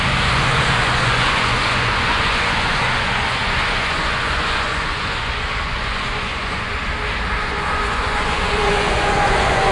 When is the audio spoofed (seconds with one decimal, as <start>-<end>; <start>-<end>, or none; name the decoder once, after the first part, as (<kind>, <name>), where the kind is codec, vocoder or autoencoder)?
0.0-6.8 (vocoder, Vocos); 7.4-9.7